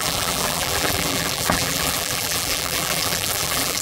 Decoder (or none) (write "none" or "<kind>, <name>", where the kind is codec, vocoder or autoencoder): vocoder, BigVGAN v2